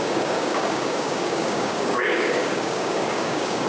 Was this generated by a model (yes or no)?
yes